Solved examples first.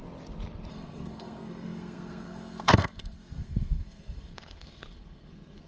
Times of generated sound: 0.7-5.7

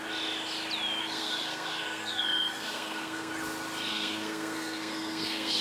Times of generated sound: 1.0-3.3; 3.9-5.6

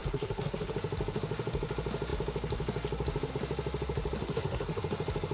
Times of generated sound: 0.0-0.7; 4.2-4.8